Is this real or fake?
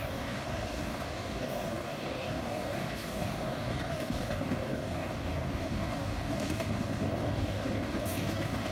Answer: fake